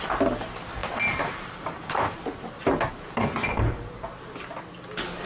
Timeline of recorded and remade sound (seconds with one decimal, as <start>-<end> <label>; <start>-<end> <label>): 0.0-0.8 recorded; 0.8-2.6 remade; 2.6-5.3 recorded